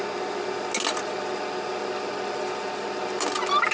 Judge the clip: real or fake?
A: real